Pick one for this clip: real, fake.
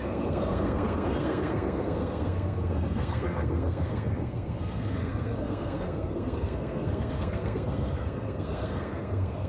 fake